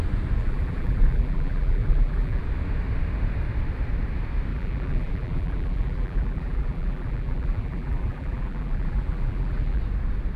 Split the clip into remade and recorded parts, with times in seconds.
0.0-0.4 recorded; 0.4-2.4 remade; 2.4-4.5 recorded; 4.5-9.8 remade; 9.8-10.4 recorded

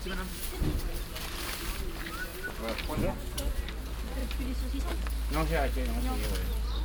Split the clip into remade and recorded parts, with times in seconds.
0.0-1.2 recorded; 1.2-1.9 remade; 1.9-6.8 recorded

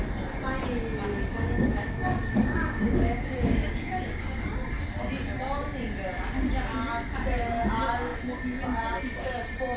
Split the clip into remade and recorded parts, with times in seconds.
0.0-1.1 recorded; 1.1-4.4 remade; 4.4-9.8 recorded

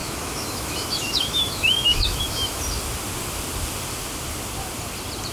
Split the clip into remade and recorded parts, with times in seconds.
0.0-2.6 remade; 2.6-5.3 recorded

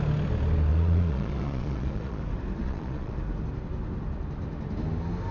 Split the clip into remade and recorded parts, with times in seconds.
0.0-0.7 recorded; 0.7-2.2 remade; 2.2-2.6 recorded; 2.6-3.2 remade; 3.2-5.3 recorded

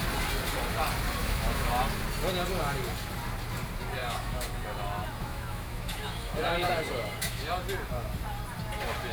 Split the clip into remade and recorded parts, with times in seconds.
0.0-1.2 recorded; 1.2-1.7 remade; 1.7-4.0 recorded; 4.0-4.5 remade; 4.5-5.2 recorded; 5.2-7.5 remade; 7.5-9.1 recorded